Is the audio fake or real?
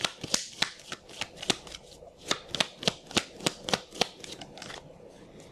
real